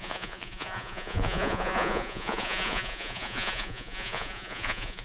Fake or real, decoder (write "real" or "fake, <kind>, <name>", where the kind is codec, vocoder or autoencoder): fake, vocoder, Vocos